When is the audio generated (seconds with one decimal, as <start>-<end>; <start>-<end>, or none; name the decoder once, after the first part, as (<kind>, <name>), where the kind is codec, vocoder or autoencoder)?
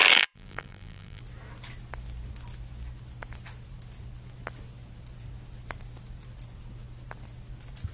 0.0-1.2 (vocoder, BigVGAN v2)